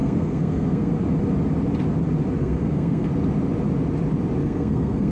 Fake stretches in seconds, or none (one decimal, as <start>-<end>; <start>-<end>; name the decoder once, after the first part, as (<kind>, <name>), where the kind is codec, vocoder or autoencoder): 0.0-0.9 (codec, SNAC); 2.4-3.1; 4.4-5.1

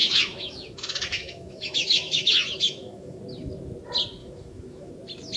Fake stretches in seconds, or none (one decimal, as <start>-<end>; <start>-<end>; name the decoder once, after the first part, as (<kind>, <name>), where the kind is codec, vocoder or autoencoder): 0.0-3.2 (autoencoder, DAC-VAE); 4.2-4.9

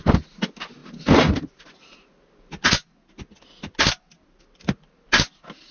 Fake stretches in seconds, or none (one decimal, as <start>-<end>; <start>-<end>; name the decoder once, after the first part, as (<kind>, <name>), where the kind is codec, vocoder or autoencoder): none

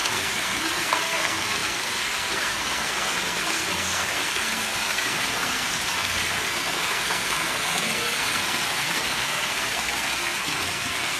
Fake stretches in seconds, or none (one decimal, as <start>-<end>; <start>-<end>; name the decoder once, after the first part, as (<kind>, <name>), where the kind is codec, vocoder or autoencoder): 0.0-11.2 (codec, SNAC)

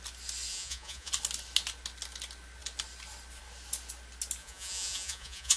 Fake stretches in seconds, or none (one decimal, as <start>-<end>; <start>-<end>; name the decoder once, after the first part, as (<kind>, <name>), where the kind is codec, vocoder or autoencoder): 0.5-1.1 (vocoder, Vocos); 4.4-5.6

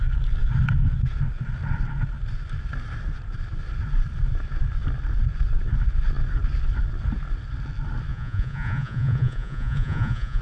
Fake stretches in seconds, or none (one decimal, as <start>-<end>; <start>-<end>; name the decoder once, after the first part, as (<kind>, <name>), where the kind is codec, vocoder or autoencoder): 8.1-10.4 (vocoder, Vocos)

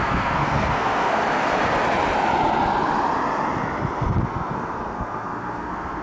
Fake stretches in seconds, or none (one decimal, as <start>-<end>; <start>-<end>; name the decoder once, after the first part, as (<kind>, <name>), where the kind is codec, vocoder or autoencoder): 0.0-1.2 (codec, SNAC); 4.2-6.0

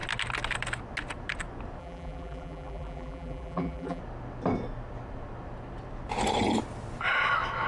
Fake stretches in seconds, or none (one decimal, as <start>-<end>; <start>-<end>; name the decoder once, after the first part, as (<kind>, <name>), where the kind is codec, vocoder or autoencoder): 1.8-4.0 (vocoder, BigVGAN v2)